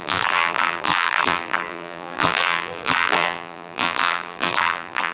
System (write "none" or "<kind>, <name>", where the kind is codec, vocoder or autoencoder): vocoder, BigVGAN v2